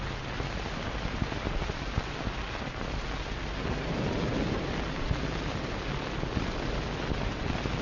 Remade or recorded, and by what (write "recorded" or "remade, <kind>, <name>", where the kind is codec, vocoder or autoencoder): recorded